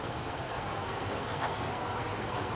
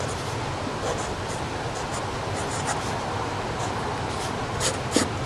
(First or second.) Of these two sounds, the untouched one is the second